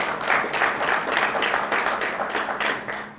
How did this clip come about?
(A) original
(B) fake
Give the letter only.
A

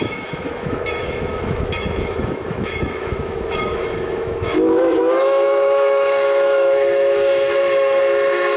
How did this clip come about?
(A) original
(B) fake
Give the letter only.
B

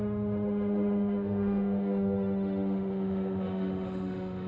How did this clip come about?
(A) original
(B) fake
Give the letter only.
B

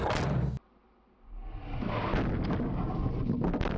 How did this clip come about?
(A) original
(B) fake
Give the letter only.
A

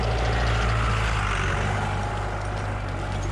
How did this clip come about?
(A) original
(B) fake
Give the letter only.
A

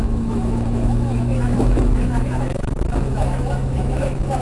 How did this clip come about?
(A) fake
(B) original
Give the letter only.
A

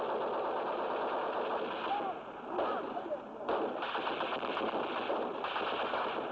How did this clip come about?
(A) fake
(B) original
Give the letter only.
B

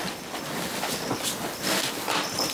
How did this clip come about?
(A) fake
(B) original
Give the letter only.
B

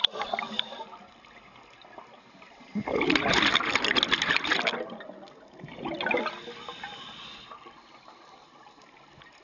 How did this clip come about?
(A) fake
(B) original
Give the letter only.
B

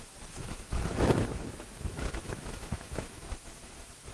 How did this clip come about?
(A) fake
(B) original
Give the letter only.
A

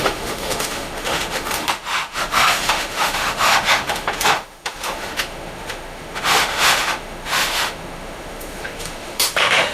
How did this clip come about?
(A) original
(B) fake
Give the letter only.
B